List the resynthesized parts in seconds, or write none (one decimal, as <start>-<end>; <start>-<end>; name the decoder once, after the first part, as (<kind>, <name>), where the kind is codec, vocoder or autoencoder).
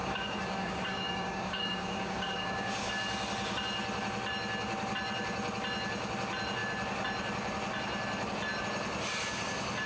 0.0-2.9 (codec, DAC)